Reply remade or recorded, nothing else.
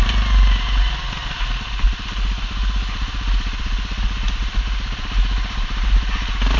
recorded